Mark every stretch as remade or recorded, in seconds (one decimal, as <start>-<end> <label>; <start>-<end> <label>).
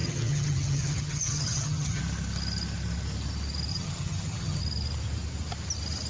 0.0-2.0 remade; 2.0-3.7 recorded; 3.7-4.6 remade; 4.6-6.1 recorded